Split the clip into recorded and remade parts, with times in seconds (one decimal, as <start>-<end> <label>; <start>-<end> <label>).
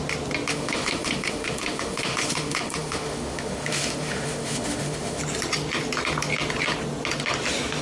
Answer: 0.0-0.5 recorded; 0.5-5.2 remade; 5.2-7.8 recorded